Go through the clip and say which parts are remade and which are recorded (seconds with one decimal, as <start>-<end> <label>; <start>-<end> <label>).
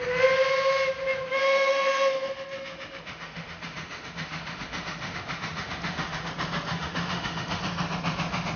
0.0-1.3 recorded; 1.3-6.3 remade; 6.3-6.7 recorded; 6.7-7.6 remade; 7.6-8.6 recorded